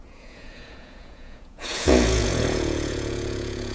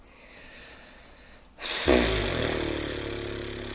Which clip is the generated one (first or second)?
first